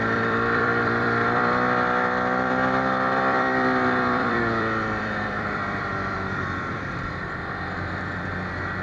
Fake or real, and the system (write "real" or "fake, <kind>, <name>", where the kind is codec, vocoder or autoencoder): fake, vocoder, BigVGAN v2